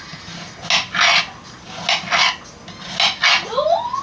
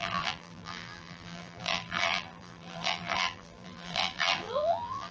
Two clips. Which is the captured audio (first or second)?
first